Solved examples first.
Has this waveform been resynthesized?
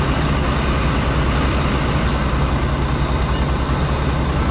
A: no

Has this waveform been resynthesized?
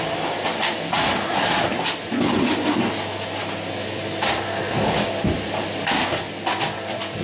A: no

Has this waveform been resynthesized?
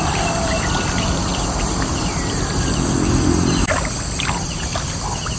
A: no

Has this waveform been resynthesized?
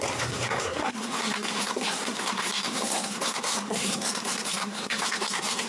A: yes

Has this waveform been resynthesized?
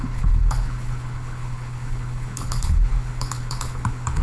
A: yes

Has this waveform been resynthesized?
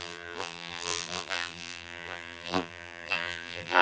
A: yes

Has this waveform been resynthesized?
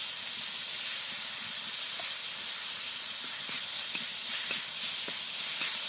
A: no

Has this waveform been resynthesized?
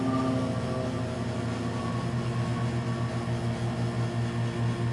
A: no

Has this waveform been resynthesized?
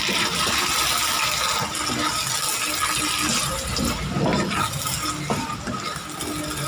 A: no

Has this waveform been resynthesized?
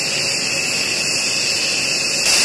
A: no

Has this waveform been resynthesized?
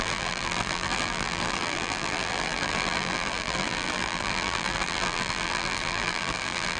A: yes